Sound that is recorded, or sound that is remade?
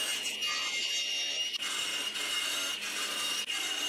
recorded